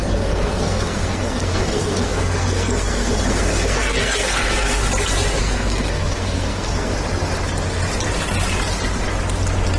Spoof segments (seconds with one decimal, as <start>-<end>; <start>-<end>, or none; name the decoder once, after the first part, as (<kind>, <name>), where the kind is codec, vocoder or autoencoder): 0.0-4.8 (codec, SNAC); 5.4-6.9